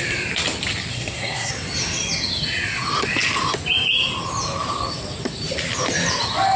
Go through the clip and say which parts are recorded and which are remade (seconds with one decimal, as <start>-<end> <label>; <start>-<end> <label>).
0.0-0.9 recorded; 0.9-1.5 remade; 1.5-6.6 recorded